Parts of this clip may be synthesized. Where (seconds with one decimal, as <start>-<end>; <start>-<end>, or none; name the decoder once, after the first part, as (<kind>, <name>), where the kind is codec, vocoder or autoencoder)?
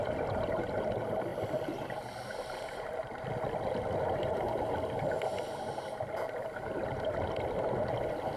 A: none